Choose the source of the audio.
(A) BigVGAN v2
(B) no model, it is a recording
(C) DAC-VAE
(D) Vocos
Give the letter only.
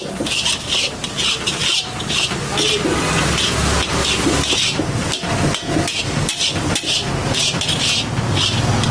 B